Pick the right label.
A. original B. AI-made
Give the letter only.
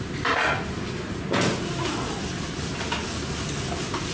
A